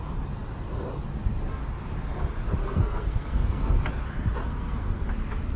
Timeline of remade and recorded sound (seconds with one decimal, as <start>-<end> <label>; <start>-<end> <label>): 0.0-2.6 recorded; 2.6-3.8 remade; 3.8-4.4 recorded; 4.4-5.1 remade; 5.1-5.6 recorded